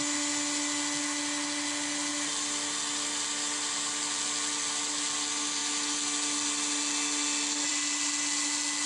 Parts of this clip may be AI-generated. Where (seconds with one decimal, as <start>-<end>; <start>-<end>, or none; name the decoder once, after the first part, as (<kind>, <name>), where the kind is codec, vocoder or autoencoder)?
none